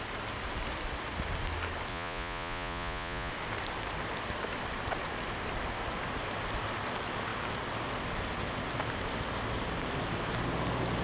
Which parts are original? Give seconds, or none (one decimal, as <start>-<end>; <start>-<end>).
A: 0.0-1.9; 3.3-11.0